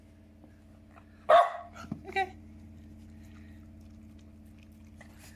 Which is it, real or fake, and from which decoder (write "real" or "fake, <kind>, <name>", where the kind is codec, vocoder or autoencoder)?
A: real